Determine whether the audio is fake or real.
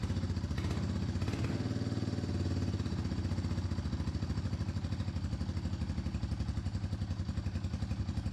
real